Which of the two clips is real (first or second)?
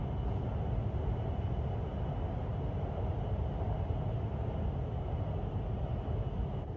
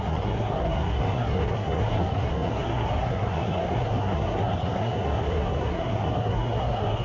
first